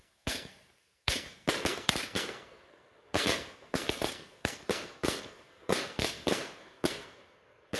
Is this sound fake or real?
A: fake